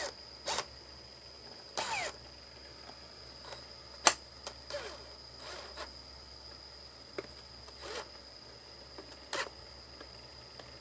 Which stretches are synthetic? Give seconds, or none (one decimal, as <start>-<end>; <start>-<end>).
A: none